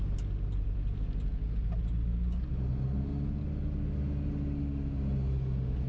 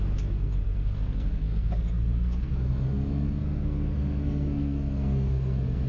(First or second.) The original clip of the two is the first